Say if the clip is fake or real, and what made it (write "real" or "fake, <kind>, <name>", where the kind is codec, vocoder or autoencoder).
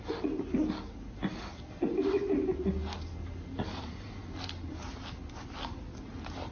real